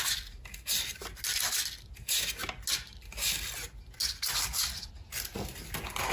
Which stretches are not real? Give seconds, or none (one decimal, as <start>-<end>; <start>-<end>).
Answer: none